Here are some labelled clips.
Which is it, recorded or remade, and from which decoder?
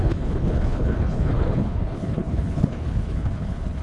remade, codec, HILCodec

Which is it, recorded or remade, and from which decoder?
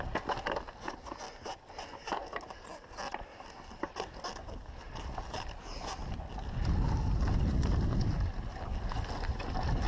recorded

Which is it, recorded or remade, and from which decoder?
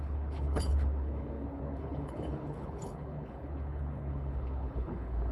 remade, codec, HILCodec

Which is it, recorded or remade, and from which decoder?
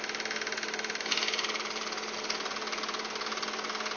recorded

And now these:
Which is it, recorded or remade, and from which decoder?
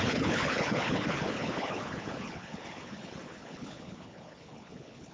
remade, codec, HILCodec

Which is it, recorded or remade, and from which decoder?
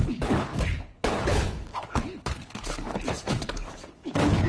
remade, codec, HILCodec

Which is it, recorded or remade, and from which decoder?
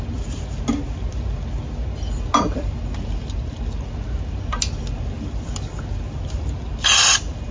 recorded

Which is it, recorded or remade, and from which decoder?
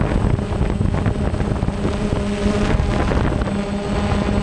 recorded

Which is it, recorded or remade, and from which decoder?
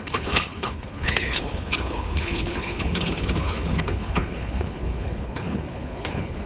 remade, codec, HILCodec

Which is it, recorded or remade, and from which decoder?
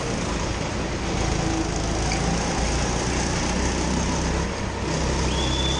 recorded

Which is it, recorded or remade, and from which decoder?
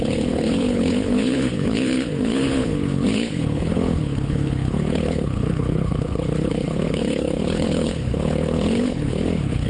remade, codec, HILCodec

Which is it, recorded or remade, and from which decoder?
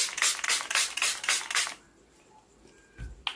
recorded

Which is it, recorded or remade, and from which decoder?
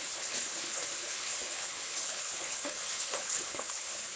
remade, codec, HILCodec